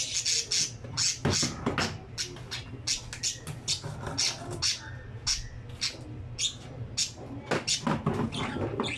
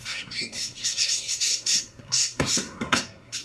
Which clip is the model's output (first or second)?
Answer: second